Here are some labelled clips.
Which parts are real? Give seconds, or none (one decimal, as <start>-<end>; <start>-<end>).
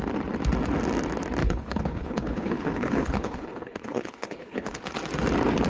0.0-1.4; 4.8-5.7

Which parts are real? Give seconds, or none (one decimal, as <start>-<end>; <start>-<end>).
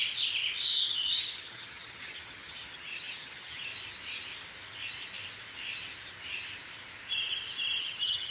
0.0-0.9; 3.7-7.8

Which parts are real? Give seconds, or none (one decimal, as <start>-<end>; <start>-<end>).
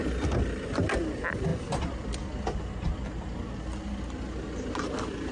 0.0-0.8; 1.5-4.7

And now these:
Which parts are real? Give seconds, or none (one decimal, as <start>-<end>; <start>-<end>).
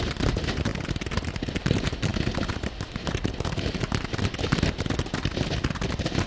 0.0-6.3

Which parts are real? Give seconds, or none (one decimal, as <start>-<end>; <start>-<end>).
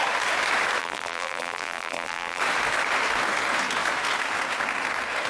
0.0-0.8; 2.4-5.3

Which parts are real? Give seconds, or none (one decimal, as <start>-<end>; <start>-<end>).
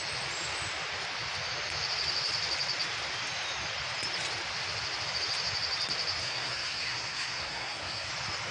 0.0-6.2; 8.1-8.5